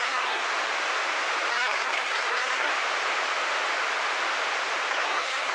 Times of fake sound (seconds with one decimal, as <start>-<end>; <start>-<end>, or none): 0.0-0.4; 1.5-2.7; 4.9-5.5